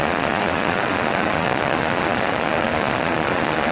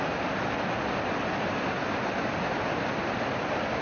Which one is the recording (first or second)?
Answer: second